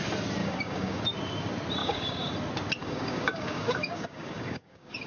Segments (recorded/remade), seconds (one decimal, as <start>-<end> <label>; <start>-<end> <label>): 0.0-0.4 recorded; 0.4-1.0 remade; 1.0-1.8 recorded; 1.8-2.3 remade; 2.3-2.8 recorded; 2.8-5.1 remade